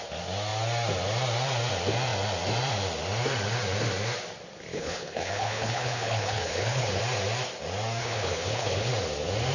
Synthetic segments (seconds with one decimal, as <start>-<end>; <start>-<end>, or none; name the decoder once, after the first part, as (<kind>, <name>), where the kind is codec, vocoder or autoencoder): 4.7-7.0 (codec, HILCodec); 8.0-8.9